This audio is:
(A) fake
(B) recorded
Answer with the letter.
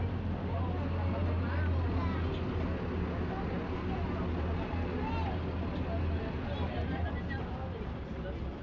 B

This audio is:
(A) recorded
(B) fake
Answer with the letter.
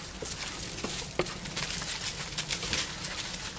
A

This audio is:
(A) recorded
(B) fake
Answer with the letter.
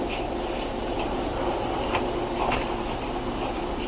A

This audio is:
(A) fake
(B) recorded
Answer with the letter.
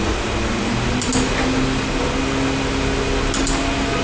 B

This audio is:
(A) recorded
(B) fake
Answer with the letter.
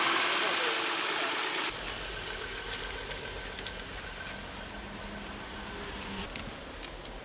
A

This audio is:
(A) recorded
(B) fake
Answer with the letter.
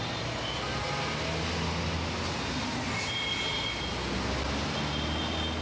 A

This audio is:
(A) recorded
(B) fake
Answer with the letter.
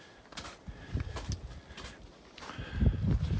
A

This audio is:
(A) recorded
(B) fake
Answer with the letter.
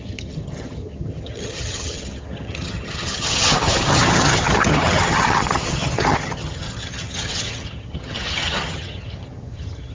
B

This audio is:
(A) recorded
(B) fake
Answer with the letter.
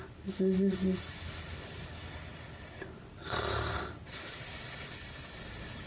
A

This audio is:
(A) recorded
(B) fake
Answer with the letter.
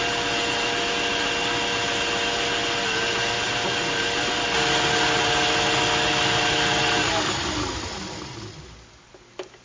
A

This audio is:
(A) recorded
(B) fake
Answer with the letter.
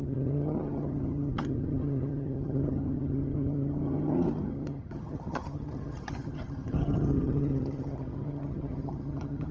B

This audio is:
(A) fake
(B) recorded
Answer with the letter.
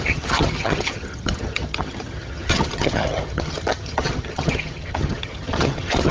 A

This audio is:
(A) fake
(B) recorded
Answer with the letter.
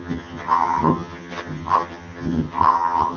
A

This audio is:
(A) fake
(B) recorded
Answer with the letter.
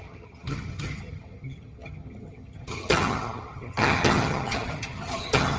A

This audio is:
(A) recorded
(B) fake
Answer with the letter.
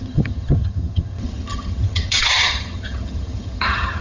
B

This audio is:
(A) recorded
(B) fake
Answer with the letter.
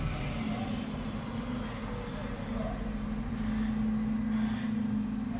A